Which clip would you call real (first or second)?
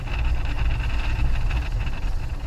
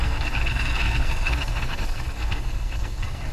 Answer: first